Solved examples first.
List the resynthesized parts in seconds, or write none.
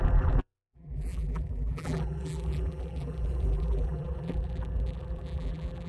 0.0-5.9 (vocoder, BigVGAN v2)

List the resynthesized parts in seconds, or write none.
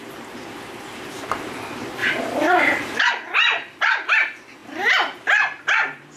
2.0-3.0 (vocoder, BigVGAN v2)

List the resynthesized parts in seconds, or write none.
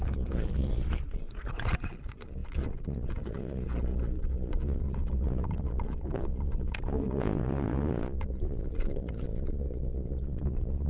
0.0-10.9 (vocoder, Vocos)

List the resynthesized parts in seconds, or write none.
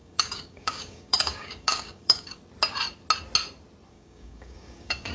0.0-2.4 (codec, DAC); 3.9-5.1